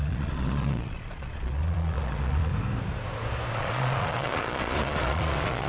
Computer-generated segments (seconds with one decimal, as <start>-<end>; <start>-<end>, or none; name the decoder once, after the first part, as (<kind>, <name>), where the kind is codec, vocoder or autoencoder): 0.0-2.5 (vocoder, Vocos); 3.5-5.7